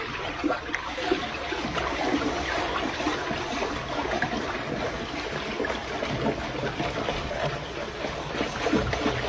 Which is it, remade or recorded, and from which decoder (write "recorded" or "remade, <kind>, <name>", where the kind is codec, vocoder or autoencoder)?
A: recorded